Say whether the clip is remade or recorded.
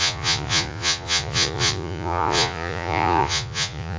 remade